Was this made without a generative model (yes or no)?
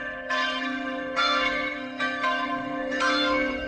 no